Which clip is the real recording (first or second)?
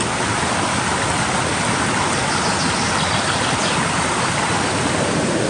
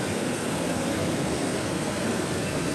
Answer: first